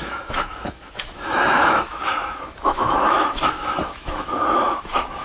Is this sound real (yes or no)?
no